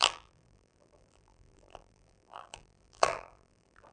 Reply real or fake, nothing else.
fake